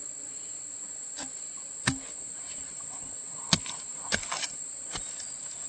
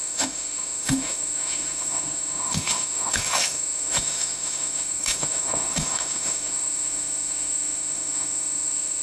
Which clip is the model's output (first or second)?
second